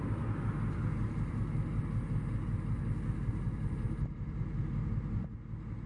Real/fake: real